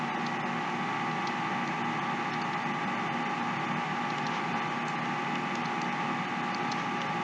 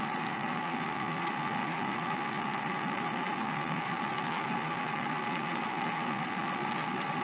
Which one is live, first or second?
first